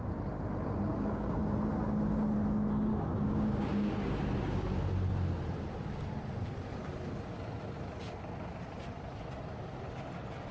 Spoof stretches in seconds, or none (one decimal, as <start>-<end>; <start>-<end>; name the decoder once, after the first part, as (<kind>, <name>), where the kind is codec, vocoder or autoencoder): 0.9-1.4 (codec, DAC); 2.9-3.9